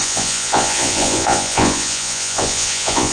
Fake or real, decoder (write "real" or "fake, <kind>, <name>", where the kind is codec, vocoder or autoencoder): fake, vocoder, Vocos